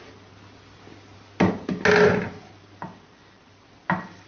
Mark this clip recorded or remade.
recorded